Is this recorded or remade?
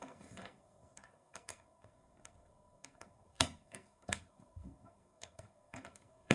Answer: remade